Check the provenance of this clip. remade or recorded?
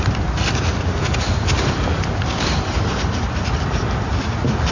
remade